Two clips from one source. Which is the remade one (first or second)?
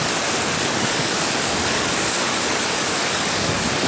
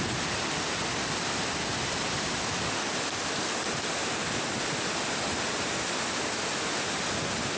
first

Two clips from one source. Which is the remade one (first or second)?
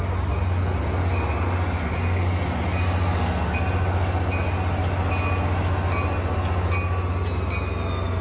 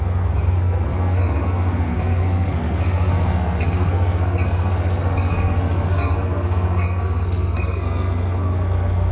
second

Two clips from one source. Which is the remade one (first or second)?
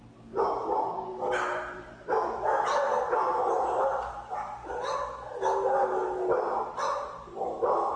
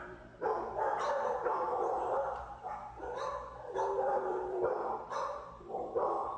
second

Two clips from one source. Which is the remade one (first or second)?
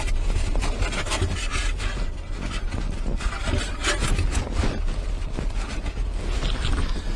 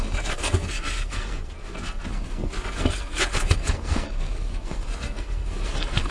second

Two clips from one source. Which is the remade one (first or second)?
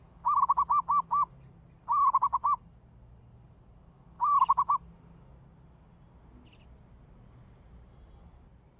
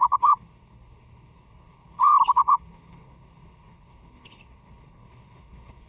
second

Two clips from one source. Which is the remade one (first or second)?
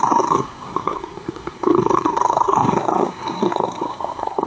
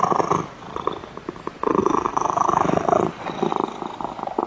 first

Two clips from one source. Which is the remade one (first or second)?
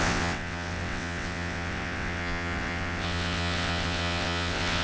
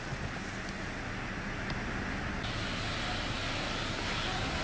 first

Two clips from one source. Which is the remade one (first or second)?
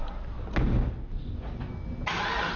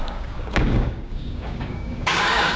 second